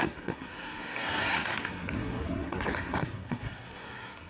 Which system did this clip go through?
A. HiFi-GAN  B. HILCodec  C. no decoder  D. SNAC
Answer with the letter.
D